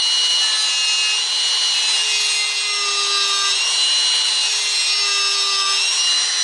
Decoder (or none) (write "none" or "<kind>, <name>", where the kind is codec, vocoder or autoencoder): none